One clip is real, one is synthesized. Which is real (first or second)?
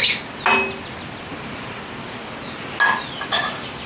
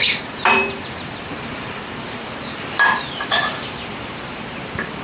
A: first